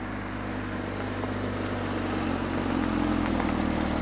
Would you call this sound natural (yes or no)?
yes